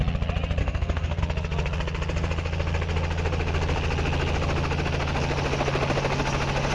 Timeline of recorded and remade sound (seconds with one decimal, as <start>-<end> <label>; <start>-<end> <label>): 0.0-0.6 recorded; 0.6-1.2 remade; 1.2-6.7 recorded